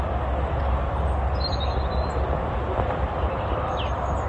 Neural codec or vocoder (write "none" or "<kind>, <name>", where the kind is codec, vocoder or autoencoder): none